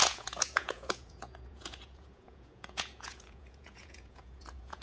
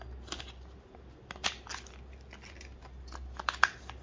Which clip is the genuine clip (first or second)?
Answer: second